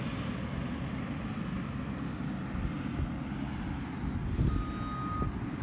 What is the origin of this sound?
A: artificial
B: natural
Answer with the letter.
B